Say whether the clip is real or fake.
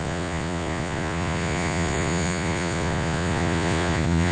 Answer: fake